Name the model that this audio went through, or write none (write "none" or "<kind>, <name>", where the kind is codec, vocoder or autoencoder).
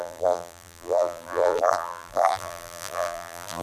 vocoder, BigVGAN v2